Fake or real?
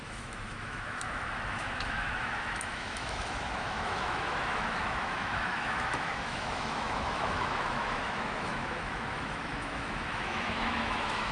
fake